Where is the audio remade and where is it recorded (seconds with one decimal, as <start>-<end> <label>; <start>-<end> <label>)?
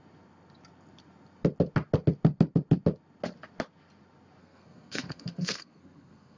0.0-4.4 recorded; 4.4-6.4 remade